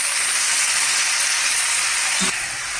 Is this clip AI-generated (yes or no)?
no